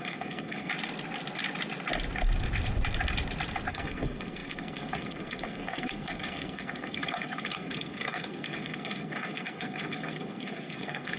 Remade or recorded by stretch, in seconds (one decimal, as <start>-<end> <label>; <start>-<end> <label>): 0.0-0.7 remade; 0.7-3.7 recorded; 3.7-11.2 remade